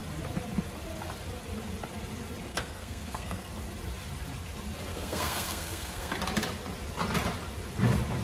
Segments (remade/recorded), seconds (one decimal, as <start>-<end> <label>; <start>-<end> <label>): 0.0-2.5 recorded; 2.5-3.5 remade; 3.5-4.9 recorded; 4.9-6.1 remade; 6.1-8.2 recorded